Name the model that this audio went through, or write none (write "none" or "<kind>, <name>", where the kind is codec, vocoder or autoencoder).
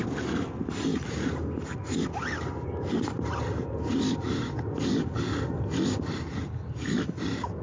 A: none